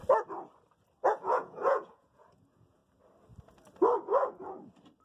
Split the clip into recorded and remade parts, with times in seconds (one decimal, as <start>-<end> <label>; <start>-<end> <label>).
0.0-1.1 recorded; 1.1-2.8 remade; 2.8-5.0 recorded